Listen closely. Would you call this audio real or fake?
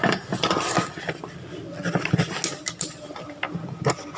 real